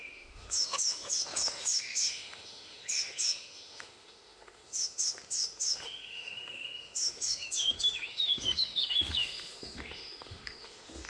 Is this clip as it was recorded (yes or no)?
no